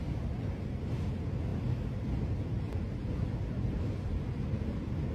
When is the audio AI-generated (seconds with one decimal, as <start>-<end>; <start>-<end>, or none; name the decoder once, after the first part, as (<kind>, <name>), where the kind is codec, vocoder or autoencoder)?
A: none